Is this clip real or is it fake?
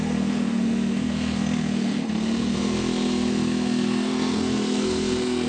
fake